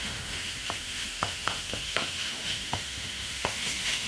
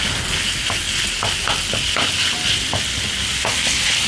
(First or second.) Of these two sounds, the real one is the second